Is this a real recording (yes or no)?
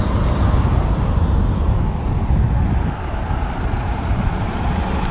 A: yes